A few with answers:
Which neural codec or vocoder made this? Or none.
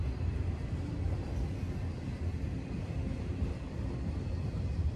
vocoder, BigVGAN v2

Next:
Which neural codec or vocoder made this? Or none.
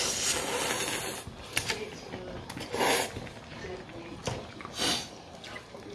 none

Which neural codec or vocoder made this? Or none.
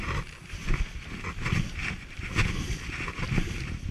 none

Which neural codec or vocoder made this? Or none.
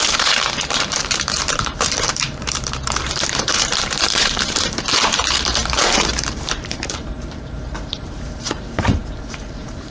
vocoder, BigVGAN v2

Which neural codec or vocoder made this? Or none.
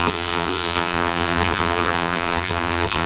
vocoder, BigVGAN v2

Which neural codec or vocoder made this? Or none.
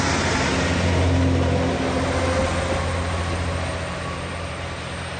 none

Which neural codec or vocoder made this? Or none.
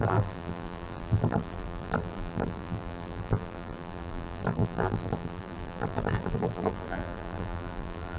vocoder, BigVGAN v2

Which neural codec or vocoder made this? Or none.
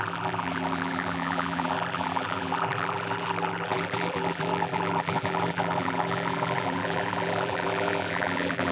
vocoder, BigVGAN v2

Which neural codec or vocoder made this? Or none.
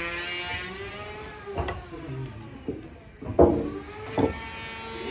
none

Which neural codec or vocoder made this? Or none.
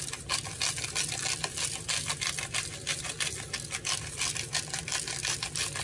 none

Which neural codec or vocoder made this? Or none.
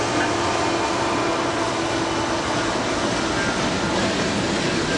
none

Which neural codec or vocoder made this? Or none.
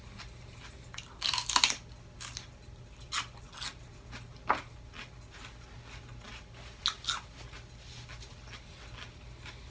none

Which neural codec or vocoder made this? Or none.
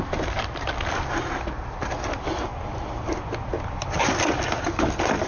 none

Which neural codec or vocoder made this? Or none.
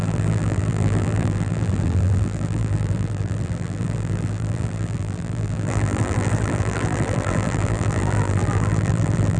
vocoder, BigVGAN v2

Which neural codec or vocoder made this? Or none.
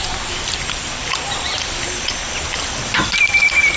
vocoder, BigVGAN v2